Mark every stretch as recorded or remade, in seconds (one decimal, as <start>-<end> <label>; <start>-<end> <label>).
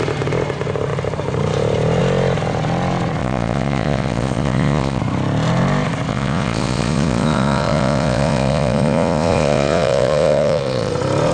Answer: 0.0-3.2 recorded; 3.2-5.0 remade; 5.0-6.1 recorded; 6.1-10.9 remade; 10.9-11.3 recorded